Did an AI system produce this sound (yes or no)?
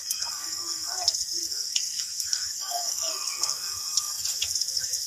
yes